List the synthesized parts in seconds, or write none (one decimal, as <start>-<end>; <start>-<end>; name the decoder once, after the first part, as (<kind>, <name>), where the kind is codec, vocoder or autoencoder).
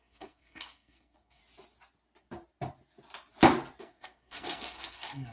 0.0-1.4 (codec, SNAC); 3.8-5.3